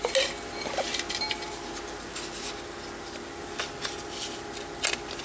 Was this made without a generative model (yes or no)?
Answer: yes